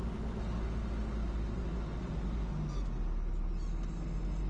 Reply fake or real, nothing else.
real